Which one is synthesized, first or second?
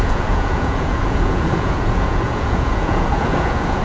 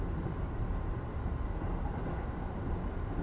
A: first